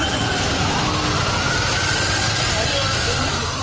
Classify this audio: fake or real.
real